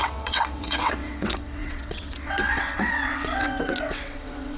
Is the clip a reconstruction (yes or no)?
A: yes